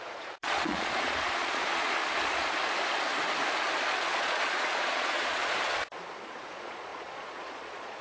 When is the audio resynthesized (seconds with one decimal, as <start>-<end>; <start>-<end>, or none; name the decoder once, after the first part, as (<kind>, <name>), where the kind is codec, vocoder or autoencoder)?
0.0-2.0 (vocoder, Vocos); 3.9-5.8; 6.5-8.0